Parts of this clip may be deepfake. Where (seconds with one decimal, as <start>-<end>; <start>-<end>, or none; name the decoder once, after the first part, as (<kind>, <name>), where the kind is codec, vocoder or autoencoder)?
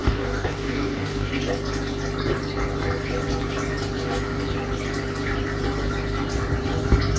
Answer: 0.0-1.3 (codec, DAC)